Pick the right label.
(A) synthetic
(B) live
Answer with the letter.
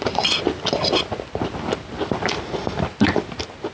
B